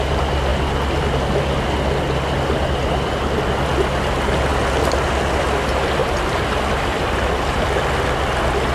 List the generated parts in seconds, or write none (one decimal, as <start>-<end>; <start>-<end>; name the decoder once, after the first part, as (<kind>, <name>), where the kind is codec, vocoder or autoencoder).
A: none